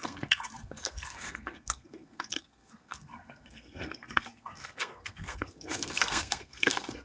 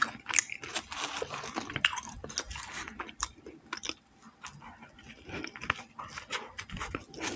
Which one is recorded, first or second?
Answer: second